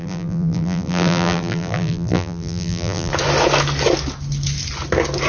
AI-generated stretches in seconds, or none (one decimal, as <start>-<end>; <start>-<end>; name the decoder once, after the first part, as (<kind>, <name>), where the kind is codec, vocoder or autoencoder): 0.0-3.1 (vocoder, BigVGAN v2)